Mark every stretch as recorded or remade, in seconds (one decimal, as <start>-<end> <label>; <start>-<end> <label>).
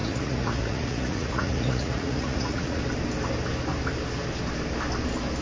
0.0-2.8 remade; 2.8-5.4 recorded